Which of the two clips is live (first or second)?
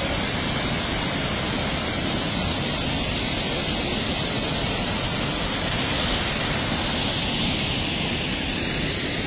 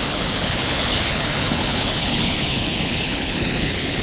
first